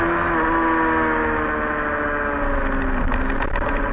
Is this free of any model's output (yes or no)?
yes